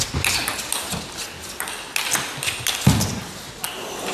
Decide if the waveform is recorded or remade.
recorded